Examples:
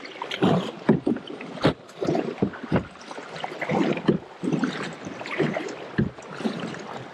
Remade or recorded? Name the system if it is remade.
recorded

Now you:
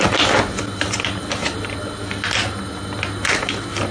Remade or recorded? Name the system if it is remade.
recorded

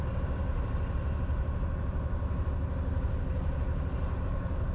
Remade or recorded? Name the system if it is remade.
recorded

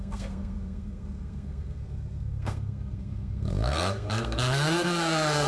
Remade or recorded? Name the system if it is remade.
remade, codec, SNAC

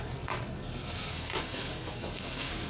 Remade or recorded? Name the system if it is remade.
remade, codec, SNAC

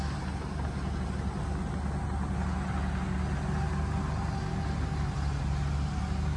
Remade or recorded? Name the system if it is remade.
recorded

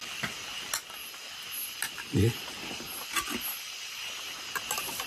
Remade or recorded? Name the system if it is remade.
recorded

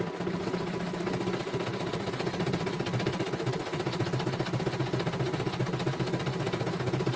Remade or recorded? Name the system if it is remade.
recorded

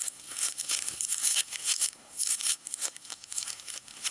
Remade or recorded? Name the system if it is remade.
remade, codec, SNAC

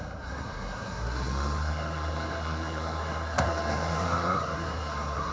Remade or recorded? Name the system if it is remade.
remade, codec, SNAC